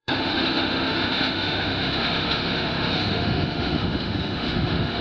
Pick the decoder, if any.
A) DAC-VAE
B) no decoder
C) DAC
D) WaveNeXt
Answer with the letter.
A